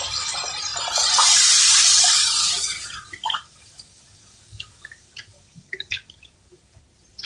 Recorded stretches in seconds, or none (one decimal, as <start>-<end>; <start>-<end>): 0.0-2.4; 6.8-7.3